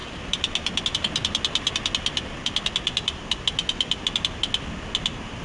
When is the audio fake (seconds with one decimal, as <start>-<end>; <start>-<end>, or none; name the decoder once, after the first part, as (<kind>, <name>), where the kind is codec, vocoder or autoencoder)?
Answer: none